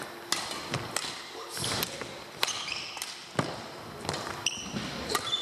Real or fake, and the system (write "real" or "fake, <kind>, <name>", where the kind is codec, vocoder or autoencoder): real